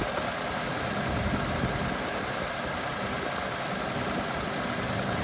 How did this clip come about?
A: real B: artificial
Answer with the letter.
A